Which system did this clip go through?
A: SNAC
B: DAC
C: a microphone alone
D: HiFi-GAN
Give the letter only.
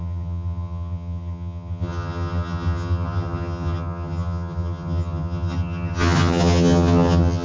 D